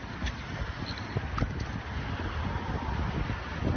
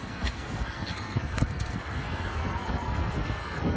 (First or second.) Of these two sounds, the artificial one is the second